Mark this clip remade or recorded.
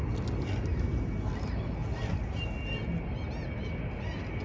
recorded